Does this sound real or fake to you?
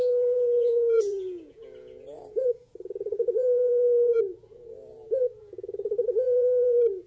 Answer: fake